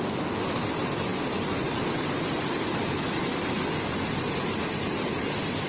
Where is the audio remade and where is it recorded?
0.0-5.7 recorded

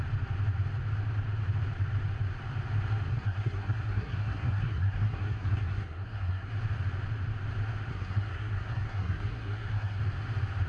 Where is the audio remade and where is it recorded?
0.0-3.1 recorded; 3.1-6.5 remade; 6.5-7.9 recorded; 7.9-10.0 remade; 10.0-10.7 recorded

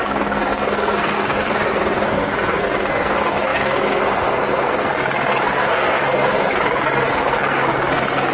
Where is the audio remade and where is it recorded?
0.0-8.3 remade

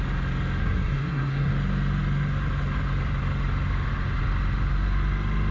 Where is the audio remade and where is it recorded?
0.0-0.6 recorded; 0.6-1.5 remade; 1.5-5.5 recorded